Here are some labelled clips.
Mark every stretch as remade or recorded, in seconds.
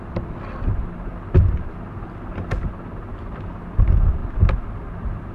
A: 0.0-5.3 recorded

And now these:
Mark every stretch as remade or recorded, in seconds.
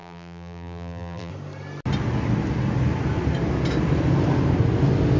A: 0.0-1.3 remade; 1.3-5.2 recorded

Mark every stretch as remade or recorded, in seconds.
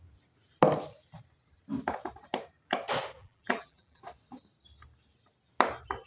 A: 0.0-3.2 recorded; 3.2-4.0 remade; 4.0-6.1 recorded